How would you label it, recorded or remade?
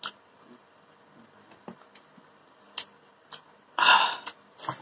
recorded